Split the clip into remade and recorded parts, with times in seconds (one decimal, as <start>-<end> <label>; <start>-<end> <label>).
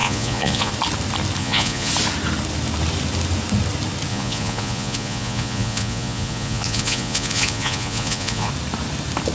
0.0-0.7 remade; 0.7-1.4 recorded; 1.4-1.9 remade; 1.9-4.1 recorded; 4.1-8.5 remade; 8.5-9.3 recorded